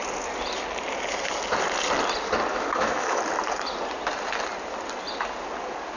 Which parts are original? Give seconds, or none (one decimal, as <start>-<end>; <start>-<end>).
0.0-2.5; 3.2-6.0